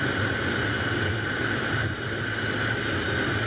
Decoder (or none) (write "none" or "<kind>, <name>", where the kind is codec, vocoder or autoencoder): none